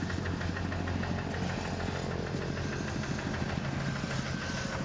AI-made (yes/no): no